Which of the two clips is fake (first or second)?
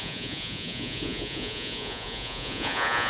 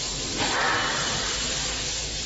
first